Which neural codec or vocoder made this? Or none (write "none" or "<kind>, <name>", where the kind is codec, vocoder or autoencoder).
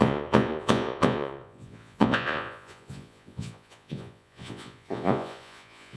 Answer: vocoder, Vocos